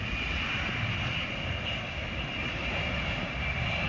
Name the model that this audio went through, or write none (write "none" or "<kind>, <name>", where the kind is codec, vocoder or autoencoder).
none